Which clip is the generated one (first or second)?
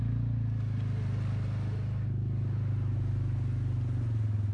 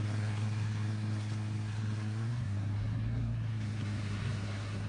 second